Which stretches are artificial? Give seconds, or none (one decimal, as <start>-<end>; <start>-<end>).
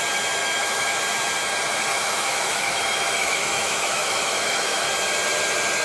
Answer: 0.4-1.0; 1.9-4.9